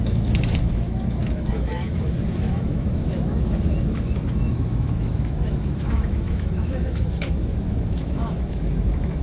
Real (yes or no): no